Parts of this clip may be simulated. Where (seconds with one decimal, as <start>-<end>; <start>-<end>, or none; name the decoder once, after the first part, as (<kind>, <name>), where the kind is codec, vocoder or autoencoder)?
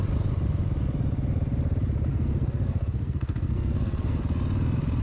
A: 2.1-4.2 (codec, SNAC)